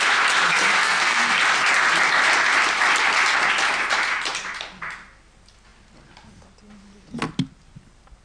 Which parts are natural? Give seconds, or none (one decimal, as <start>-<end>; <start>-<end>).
0.0-0.5; 1.3-8.2